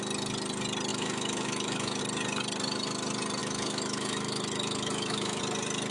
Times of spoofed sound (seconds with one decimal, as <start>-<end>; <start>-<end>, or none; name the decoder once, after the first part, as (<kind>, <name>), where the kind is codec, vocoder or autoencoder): 0.9-2.0 (autoencoder, DAC-VAE); 3.4-5.4